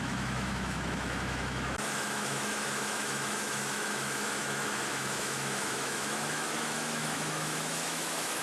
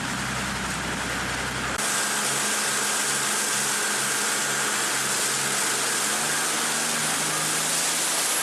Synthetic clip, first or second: first